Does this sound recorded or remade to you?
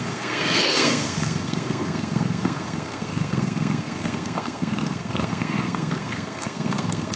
remade